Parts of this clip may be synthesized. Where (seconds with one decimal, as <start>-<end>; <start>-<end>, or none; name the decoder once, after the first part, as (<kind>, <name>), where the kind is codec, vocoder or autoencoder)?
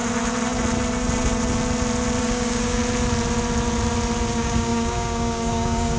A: 2.2-2.8 (codec, DAC); 4.3-6.0